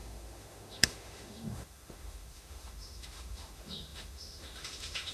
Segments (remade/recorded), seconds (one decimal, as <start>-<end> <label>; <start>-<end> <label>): 0.0-5.1 remade